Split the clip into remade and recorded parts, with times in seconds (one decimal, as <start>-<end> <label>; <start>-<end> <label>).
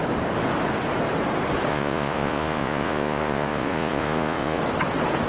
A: 0.0-1.7 recorded; 1.7-4.6 remade; 4.6-5.3 recorded